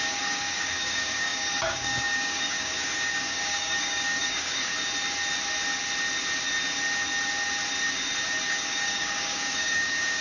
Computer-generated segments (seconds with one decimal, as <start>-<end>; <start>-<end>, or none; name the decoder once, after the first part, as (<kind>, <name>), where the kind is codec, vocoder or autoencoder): 0.0-4.7 (codec, DAC); 8.4-10.2